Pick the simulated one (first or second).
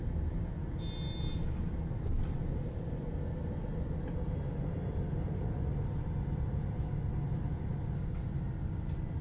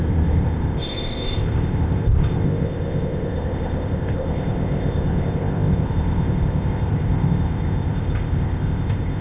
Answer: second